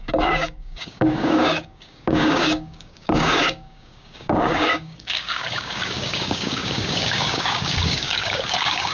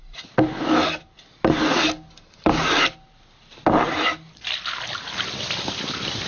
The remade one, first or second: first